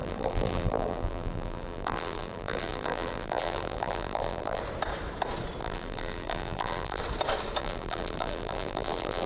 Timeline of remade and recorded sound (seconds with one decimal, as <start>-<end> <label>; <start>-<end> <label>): 0.0-4.6 remade; 4.6-5.6 recorded; 5.6-7.0 remade; 7.0-7.6 recorded; 7.6-9.3 remade